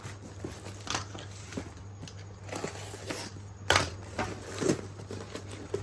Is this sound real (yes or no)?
yes